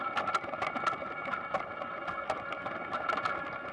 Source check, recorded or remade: recorded